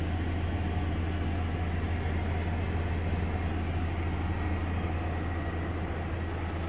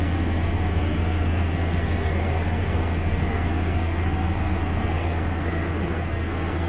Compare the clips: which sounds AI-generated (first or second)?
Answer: second